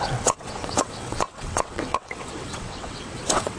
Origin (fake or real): fake